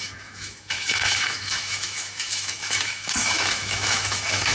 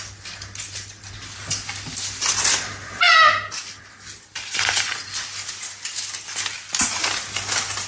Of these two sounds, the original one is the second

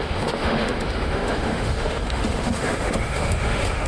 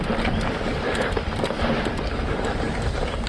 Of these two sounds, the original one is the second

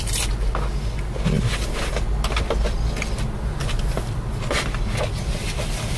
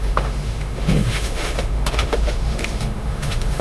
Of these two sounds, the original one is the first